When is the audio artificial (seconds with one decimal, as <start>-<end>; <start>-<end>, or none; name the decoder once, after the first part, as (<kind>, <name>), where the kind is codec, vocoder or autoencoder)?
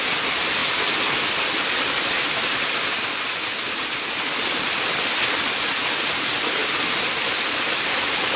none